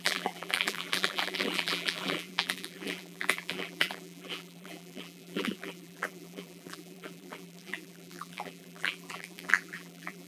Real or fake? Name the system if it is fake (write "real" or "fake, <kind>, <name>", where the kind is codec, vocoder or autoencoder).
fake, vocoder, BigVGAN v2